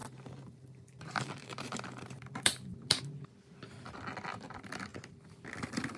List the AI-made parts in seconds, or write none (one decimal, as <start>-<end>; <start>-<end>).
0.0-3.0